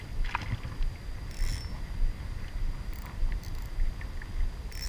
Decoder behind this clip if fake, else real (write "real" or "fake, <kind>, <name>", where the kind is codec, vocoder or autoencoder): real